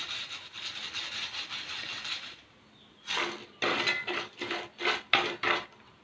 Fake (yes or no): no